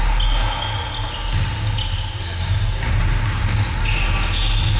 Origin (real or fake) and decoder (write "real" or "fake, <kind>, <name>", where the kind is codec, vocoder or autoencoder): real